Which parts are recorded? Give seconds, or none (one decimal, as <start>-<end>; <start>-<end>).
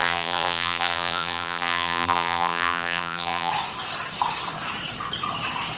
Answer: 3.5-5.8